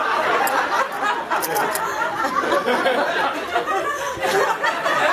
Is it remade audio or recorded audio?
recorded